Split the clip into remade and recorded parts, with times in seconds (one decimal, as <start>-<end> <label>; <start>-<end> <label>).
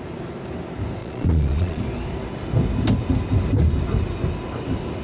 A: 0.0-1.0 recorded; 1.0-1.8 remade; 1.8-5.0 recorded